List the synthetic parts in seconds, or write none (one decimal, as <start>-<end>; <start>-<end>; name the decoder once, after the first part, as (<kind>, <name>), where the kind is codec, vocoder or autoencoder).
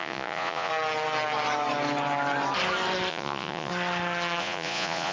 0.0-0.7 (vocoder, Vocos); 3.1-3.7; 4.4-5.1